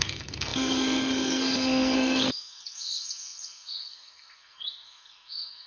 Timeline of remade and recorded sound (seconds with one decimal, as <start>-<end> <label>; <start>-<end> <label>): 0.0-5.7 remade